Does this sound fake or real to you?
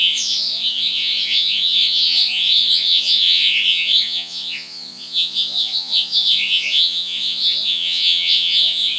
fake